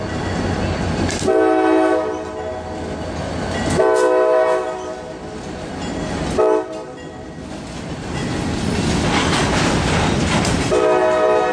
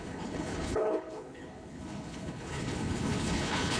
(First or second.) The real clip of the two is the first